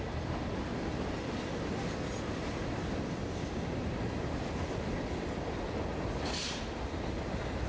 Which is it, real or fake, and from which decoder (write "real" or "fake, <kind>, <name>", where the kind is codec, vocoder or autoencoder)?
real